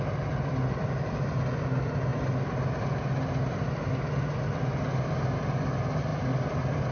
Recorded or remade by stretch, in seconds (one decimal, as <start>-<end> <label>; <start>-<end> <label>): 0.0-6.9 recorded